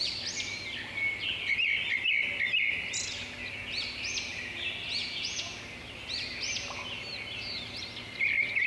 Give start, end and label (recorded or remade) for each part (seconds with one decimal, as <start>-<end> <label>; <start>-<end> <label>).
0.0-5.0 recorded; 5.0-5.5 remade; 5.5-8.7 recorded